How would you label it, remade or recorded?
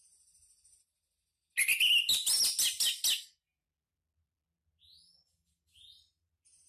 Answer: recorded